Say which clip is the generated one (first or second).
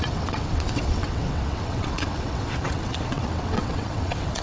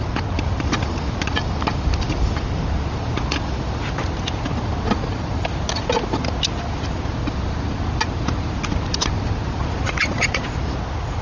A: first